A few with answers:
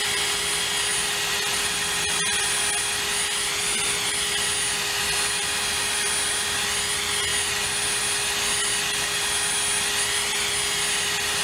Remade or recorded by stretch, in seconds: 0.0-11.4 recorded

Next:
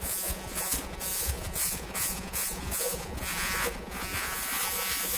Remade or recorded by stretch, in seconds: 0.0-5.2 remade

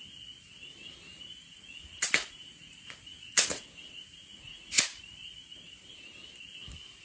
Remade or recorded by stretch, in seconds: 0.0-1.1 recorded; 1.1-5.0 remade; 5.0-7.0 recorded

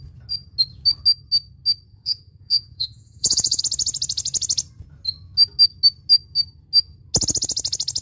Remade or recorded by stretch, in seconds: 0.0-1.9 recorded; 1.9-3.6 remade; 3.6-8.0 recorded

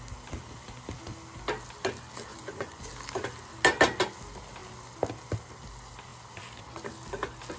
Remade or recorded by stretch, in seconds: 0.0-2.3 recorded; 2.3-2.9 remade; 2.9-7.6 recorded

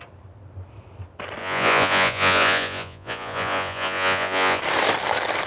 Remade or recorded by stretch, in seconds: 0.0-1.4 recorded; 1.4-4.6 remade; 4.6-5.5 recorded

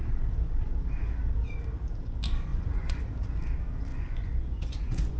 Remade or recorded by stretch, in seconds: 0.0-2.5 recorded; 2.5-3.0 remade; 3.0-3.9 recorded; 3.9-5.2 remade